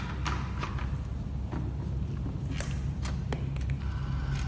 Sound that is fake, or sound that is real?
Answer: real